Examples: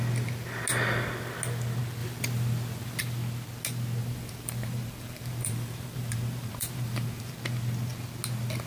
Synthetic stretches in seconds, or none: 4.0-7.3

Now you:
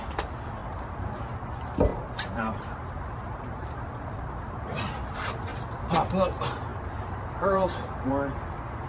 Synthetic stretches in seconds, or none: 0.6-1.2; 1.9-4.8; 6.7-8.1

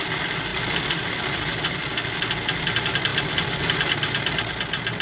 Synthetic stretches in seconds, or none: 0.5-1.1; 1.5-2.1; 3.1-4.5

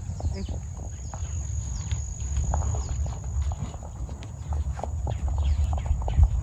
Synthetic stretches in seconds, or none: 3.6-5.8

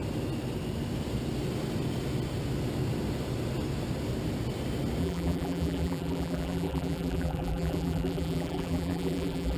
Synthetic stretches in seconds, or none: 5.0-9.6

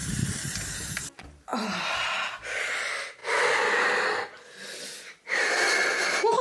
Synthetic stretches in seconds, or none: none

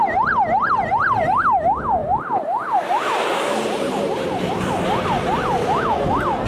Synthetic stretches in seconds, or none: 2.0-4.1

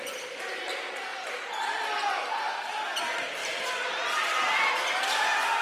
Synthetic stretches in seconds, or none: 3.4-4.8